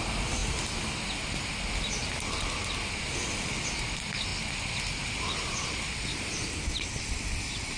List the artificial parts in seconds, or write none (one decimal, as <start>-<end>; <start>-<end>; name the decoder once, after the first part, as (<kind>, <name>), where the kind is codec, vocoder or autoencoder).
none